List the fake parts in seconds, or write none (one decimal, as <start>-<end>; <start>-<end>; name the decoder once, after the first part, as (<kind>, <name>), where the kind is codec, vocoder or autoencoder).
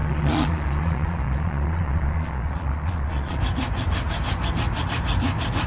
0.0-3.4 (vocoder, Vocos)